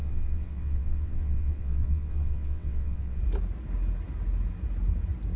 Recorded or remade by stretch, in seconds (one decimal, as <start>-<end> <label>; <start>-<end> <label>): 0.0-3.2 remade; 3.2-5.4 recorded